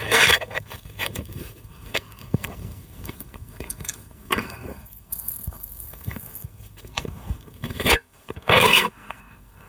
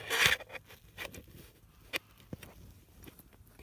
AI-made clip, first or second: first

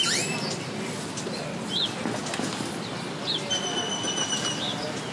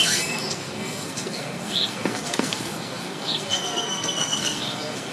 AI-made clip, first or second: second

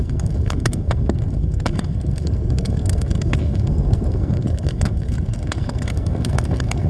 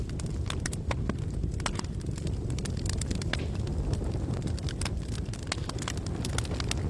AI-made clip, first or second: first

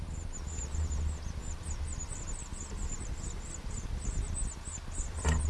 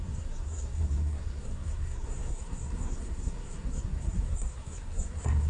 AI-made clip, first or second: second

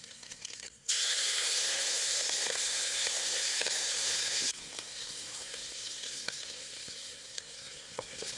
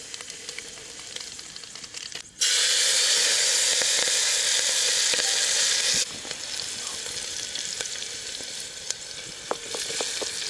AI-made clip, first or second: first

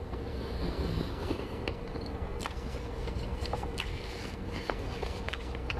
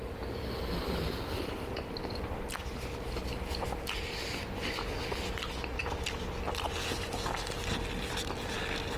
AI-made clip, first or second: first